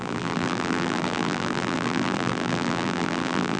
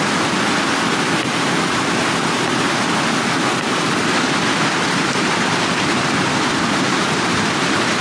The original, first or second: second